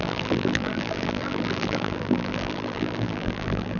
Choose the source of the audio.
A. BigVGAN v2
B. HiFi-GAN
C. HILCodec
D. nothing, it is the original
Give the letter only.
A